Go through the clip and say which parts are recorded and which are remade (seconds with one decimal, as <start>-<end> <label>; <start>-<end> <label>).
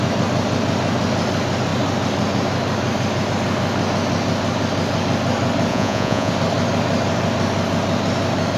0.0-5.7 recorded; 5.7-6.3 remade; 6.3-8.6 recorded